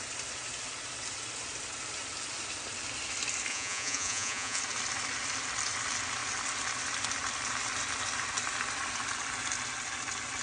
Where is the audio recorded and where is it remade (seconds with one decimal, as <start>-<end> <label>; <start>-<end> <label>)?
0.0-3.5 recorded; 3.5-4.6 remade; 4.6-10.4 recorded